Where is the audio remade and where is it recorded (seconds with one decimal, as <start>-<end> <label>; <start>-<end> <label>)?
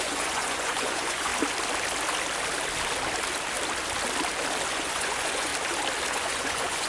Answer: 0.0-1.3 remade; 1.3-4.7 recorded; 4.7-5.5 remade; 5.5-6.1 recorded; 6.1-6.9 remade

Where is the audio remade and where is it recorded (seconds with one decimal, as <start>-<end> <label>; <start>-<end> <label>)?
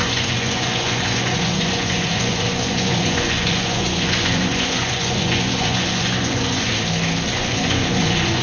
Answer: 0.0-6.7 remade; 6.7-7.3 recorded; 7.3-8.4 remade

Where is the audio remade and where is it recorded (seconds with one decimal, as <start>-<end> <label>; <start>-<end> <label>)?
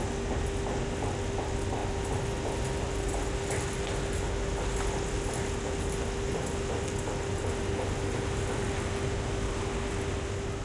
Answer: 0.0-10.6 recorded